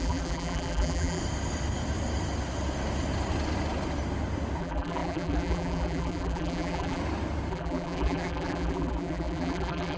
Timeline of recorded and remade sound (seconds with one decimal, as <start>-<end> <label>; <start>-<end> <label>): 0.0-1.2 remade; 1.2-4.6 recorded; 4.6-7.0 remade; 7.0-7.5 recorded; 7.5-10.0 remade